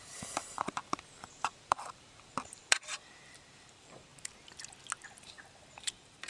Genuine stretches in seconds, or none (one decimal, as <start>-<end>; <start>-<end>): 4.1-5.2